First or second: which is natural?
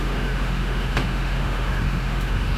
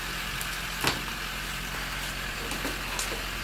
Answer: second